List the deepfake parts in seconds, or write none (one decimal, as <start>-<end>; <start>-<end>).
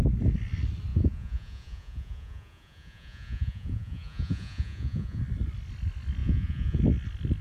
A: 0.9-5.2; 6.2-6.8